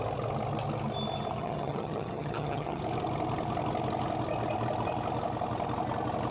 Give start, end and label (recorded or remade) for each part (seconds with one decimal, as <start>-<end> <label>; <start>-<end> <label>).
0.0-1.4 recorded; 1.4-2.8 remade; 2.8-6.3 recorded